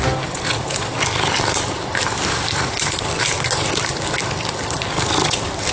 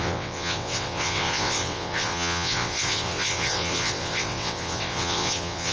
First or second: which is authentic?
first